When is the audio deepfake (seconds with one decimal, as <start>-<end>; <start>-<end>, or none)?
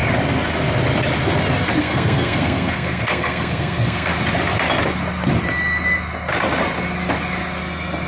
1.8-4.1; 7.6-8.1